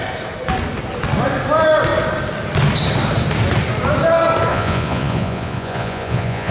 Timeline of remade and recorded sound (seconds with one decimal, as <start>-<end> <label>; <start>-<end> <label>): 0.0-4.5 recorded; 4.5-6.5 remade